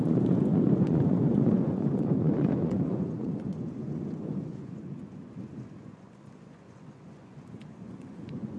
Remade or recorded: remade